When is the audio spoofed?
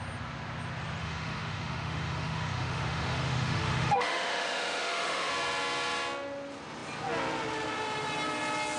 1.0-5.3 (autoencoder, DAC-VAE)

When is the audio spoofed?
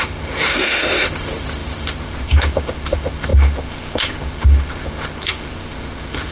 0.0-6.3 (autoencoder, DAC-VAE)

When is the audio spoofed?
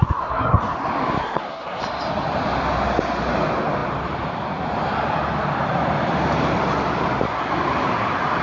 0.0-0.6 (codec, SNAC); 1.2-1.8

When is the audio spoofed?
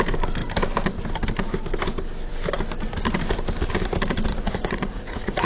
4.3-5.5 (vocoder, Vocos)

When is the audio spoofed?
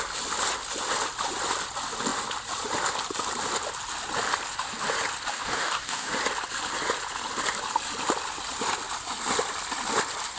5.3-6.1 (codec, DAC)